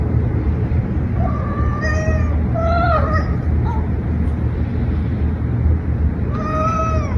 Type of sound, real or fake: real